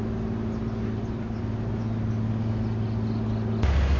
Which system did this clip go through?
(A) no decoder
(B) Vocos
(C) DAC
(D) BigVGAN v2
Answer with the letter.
A